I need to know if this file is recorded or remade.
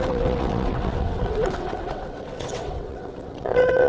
remade